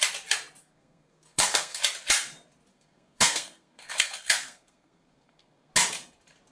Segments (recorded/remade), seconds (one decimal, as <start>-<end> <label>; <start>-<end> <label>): 0.0-0.6 recorded; 0.6-1.8 remade; 1.8-2.7 recorded; 2.7-5.7 remade; 5.7-6.5 recorded